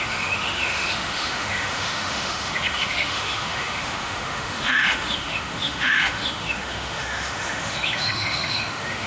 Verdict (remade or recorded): remade